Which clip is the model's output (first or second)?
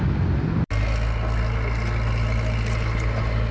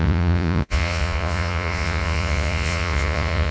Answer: second